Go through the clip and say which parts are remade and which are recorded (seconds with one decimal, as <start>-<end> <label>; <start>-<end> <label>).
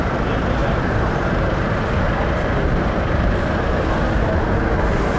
0.0-0.6 recorded; 0.6-3.7 remade; 3.7-5.2 recorded